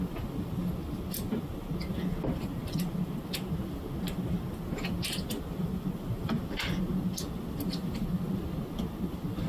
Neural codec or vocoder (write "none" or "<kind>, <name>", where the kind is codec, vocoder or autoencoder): none